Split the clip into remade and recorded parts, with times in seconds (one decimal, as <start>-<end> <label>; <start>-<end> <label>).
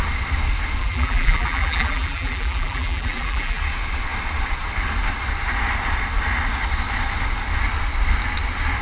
0.0-0.8 recorded; 0.8-3.6 remade; 3.6-8.8 recorded